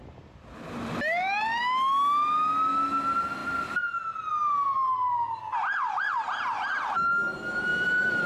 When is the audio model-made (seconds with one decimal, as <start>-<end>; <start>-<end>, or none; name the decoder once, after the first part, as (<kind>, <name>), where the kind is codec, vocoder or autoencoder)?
0.0-1.6 (vocoder, BigVGAN v2); 3.4-4.3; 7.7-8.3